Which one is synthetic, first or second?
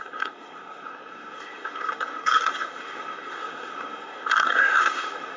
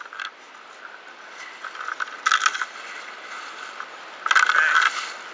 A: first